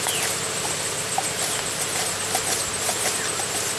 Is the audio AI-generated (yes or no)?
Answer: no